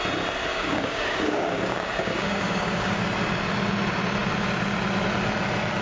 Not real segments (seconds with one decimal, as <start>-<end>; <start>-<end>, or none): 0.5-3.0